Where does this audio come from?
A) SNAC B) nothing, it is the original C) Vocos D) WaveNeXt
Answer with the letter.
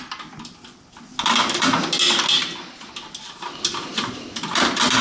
B